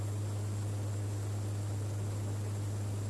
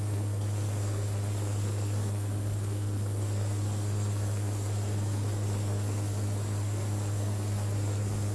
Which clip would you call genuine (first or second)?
first